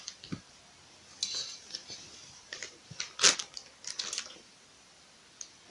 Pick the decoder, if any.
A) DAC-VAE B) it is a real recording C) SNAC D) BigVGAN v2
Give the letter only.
B